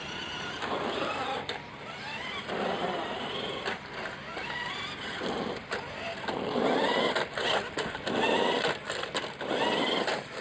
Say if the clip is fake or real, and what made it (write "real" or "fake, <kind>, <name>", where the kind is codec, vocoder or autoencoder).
real